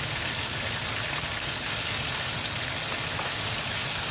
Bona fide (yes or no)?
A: yes